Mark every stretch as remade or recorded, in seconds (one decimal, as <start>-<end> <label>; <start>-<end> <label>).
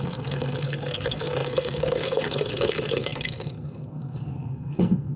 0.0-5.2 remade